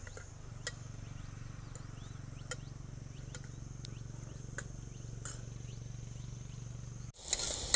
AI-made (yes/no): no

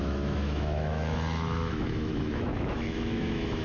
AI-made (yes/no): yes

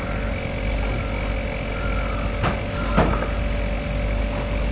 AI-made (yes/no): no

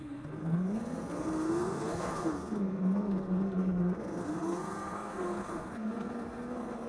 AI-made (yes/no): yes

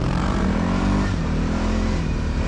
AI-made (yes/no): yes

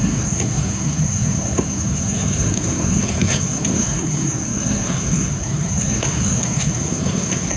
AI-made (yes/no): yes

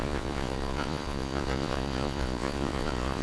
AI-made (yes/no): yes